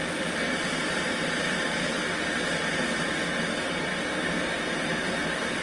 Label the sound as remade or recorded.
recorded